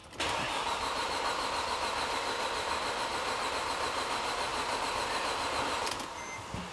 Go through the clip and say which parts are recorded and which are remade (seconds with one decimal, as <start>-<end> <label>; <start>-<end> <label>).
0.0-6.7 recorded